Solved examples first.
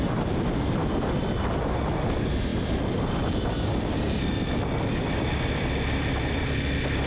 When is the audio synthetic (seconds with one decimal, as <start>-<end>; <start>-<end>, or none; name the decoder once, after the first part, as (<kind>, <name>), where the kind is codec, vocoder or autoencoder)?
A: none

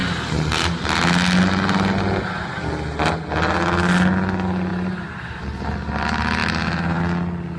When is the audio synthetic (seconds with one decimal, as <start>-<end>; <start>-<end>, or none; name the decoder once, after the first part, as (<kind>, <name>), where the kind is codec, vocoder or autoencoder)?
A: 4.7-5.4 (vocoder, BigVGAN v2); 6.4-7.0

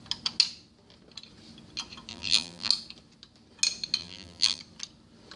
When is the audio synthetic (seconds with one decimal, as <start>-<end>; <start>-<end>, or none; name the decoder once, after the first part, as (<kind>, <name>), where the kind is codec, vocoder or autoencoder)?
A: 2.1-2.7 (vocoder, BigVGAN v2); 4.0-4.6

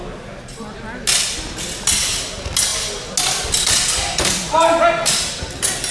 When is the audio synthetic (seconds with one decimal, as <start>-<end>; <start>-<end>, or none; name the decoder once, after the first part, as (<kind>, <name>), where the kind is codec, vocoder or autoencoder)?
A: none

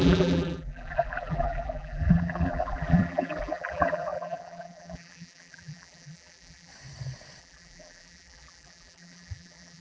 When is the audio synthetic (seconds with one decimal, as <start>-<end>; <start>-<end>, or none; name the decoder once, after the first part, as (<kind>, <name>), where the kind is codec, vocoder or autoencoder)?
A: 0.0-6.7 (vocoder, BigVGAN v2); 7.4-9.8

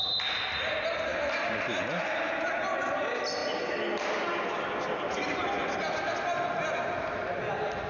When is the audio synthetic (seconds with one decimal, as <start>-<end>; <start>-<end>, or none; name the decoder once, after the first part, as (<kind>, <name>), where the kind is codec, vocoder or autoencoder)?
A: 1.1-3.0 (vocoder, BigVGAN v2)